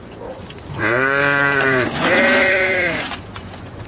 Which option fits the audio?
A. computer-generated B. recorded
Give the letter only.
A